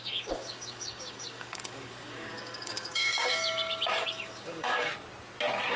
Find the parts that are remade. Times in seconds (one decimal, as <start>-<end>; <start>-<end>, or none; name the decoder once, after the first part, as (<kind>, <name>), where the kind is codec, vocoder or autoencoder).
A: 0.0-4.9 (codec, DAC)